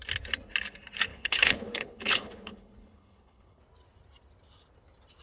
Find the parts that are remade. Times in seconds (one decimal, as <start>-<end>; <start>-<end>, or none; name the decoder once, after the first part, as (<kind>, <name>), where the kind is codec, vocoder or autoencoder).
1.1-3.6 (codec, HILCodec)